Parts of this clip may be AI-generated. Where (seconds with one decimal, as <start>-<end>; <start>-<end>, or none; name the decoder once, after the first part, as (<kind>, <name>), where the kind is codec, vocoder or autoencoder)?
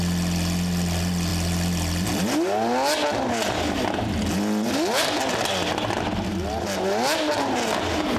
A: none